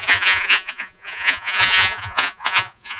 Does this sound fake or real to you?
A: fake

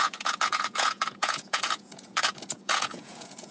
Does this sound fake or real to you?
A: fake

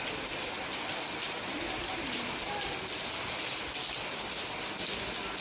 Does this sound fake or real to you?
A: real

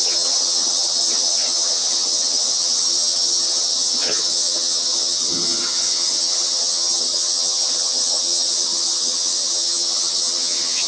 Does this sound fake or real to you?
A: fake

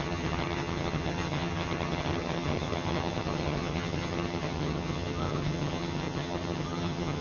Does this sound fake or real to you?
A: fake